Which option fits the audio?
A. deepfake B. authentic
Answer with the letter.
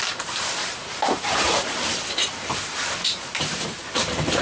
A